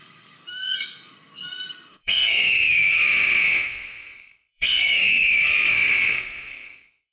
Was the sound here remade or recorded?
remade